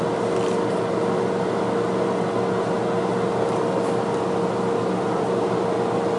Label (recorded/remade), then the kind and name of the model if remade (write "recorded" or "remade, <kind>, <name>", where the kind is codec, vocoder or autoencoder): recorded